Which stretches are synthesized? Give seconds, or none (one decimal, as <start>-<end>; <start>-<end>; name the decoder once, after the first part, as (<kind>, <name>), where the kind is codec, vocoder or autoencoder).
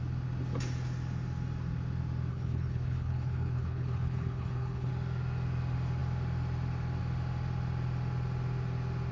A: 2.3-4.9 (codec, HILCodec)